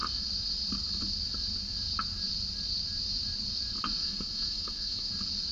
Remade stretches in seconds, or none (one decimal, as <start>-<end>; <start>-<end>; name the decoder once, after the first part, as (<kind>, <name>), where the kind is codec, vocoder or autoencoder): 4.0-5.1 (autoencoder, DAC-VAE)